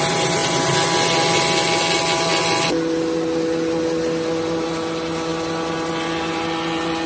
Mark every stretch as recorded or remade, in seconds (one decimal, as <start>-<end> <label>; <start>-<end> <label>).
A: 0.0-7.1 recorded